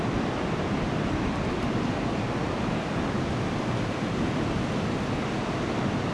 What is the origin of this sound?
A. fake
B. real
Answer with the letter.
A